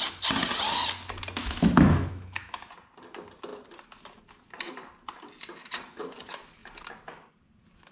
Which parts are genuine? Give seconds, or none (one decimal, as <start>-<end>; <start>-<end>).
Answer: 0.0-1.4; 2.7-7.9